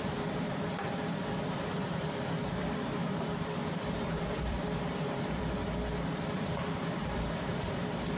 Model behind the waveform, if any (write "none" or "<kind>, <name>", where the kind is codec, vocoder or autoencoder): vocoder, BigVGAN v2